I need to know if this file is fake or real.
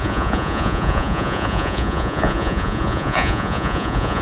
fake